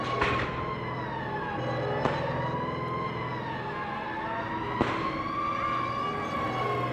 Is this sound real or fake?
real